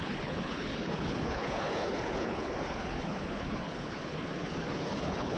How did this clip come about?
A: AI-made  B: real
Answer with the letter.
A